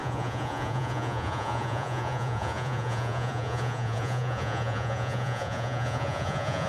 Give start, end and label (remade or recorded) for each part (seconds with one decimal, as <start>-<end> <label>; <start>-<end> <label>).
0.0-6.7 remade